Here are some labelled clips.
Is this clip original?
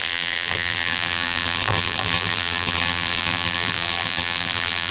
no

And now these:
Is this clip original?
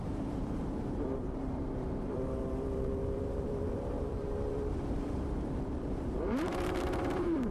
no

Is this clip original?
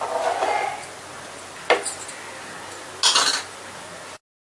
yes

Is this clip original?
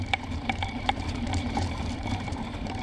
no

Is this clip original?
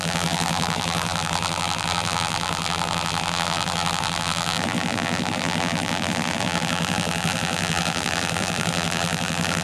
no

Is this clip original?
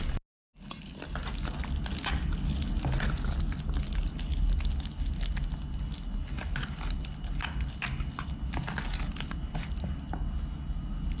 yes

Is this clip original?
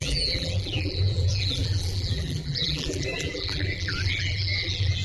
no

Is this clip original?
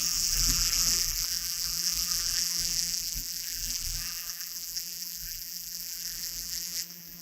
no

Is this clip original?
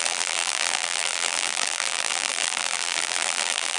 no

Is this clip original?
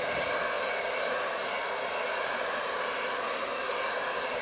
yes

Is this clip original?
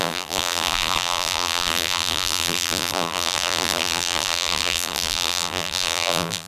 no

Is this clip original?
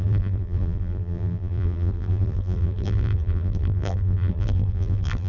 no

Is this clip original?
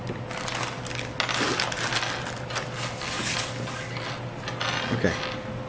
yes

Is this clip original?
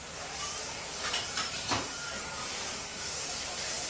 no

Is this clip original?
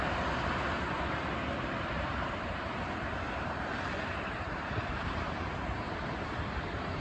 no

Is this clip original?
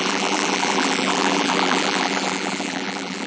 no